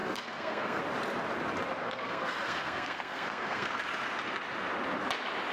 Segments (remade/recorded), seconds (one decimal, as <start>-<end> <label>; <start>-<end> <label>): 0.0-0.8 remade; 0.8-1.8 recorded; 1.8-3.8 remade; 3.8-5.5 recorded